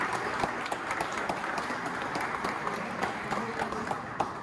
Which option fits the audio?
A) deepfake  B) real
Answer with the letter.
B